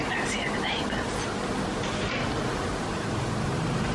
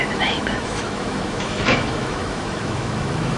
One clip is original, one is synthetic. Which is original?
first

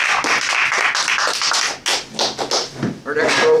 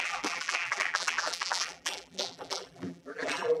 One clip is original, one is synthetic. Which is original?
first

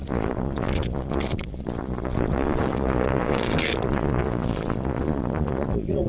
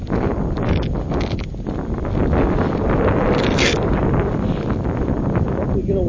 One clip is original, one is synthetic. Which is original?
second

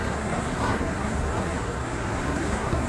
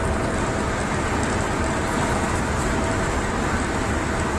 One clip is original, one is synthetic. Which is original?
second